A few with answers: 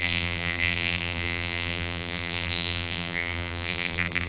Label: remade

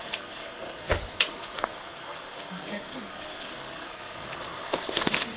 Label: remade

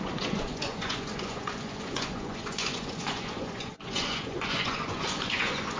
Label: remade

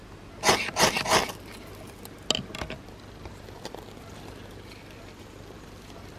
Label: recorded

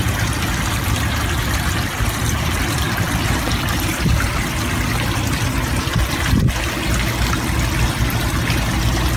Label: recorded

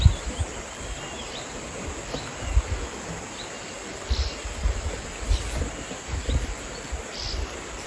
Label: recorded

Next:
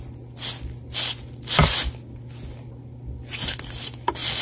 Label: recorded